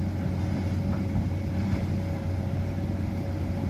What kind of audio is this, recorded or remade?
recorded